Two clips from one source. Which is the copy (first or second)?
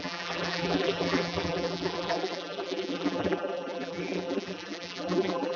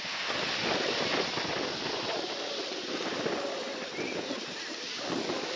first